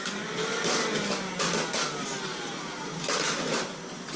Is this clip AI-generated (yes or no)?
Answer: no